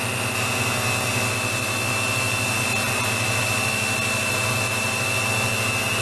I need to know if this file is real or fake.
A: real